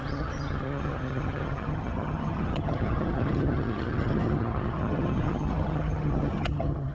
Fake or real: fake